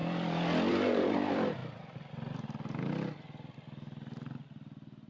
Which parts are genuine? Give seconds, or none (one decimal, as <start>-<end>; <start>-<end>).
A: 0.0-0.7; 1.6-5.1